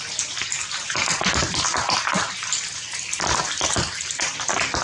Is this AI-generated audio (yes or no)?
no